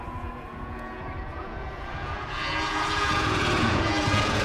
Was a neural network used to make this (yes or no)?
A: yes